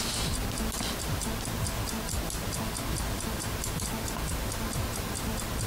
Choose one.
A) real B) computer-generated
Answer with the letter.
A